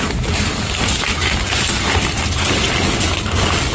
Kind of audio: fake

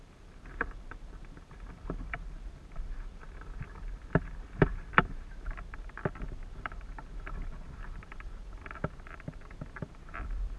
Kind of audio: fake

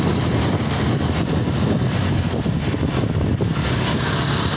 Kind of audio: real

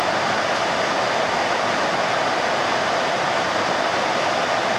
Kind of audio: real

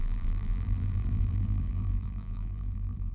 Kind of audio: fake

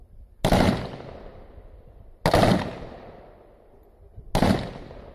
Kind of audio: real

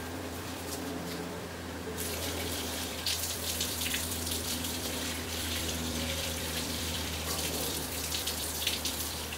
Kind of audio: fake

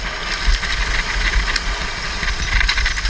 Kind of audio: real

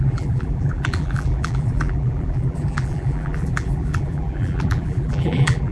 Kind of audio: fake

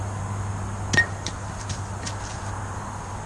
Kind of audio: real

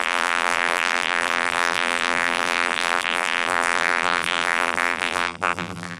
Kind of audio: fake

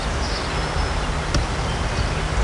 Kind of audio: real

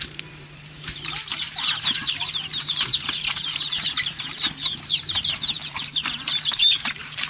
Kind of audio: fake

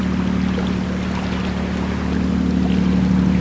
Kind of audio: real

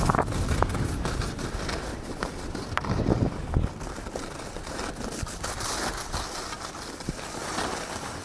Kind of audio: real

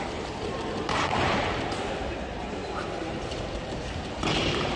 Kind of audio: fake